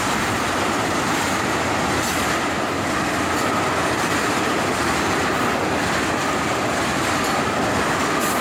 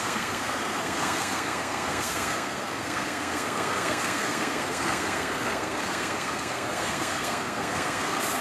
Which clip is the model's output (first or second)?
second